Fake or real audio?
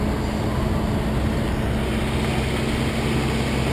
real